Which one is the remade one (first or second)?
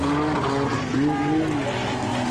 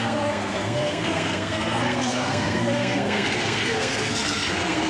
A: second